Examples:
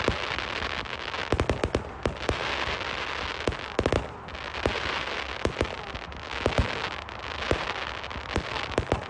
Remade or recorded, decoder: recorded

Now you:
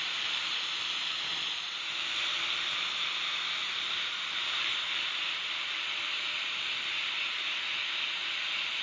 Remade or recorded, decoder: remade, vocoder, BigVGAN v2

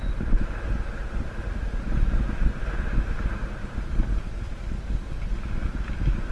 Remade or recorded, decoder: recorded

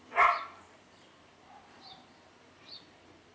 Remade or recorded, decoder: remade, vocoder, BigVGAN v2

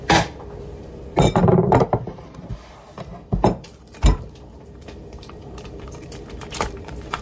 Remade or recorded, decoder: remade, vocoder, BigVGAN v2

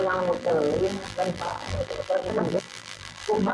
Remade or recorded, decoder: remade, vocoder, BigVGAN v2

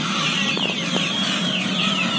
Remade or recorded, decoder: remade, vocoder, BigVGAN v2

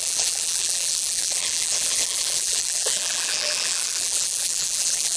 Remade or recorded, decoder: remade, vocoder, BigVGAN v2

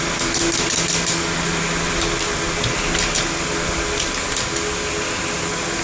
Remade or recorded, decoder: recorded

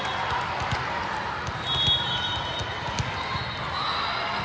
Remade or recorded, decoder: recorded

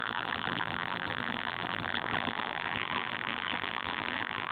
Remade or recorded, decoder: remade, vocoder, BigVGAN v2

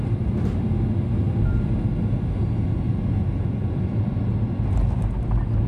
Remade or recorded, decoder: recorded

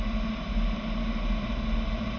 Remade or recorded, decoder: recorded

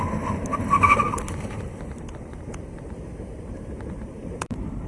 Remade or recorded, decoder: remade, vocoder, BigVGAN v2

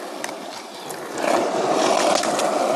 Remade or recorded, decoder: recorded